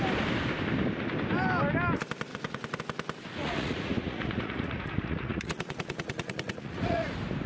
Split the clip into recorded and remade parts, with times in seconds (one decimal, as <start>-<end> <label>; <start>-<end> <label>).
0.0-2.3 recorded; 2.3-2.8 remade; 2.8-3.4 recorded; 3.4-7.1 remade; 7.1-7.5 recorded